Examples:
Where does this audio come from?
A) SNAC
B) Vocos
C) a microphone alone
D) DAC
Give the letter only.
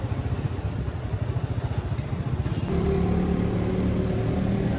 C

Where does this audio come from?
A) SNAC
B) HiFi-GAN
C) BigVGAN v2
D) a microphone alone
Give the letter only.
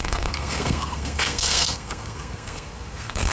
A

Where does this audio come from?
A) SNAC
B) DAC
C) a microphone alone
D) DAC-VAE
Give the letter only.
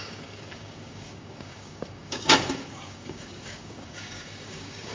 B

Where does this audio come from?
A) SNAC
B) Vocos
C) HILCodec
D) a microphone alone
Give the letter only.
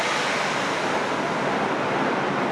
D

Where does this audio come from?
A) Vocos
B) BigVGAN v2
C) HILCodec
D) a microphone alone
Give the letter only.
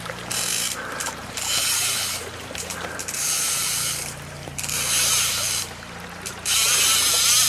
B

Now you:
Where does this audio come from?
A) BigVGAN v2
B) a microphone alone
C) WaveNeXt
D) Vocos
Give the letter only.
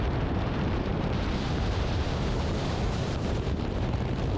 A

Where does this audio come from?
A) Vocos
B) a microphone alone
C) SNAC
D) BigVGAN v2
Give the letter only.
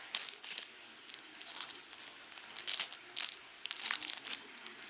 B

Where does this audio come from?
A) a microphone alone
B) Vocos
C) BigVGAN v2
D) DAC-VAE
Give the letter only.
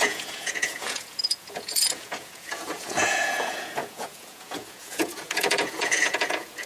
B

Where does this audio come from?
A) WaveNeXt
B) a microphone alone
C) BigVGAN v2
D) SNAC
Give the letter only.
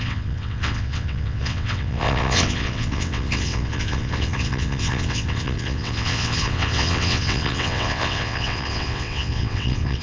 A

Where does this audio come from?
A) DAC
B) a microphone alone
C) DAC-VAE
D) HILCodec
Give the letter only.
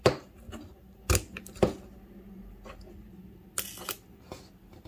B